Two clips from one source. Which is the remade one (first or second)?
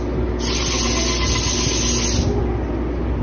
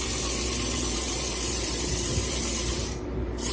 second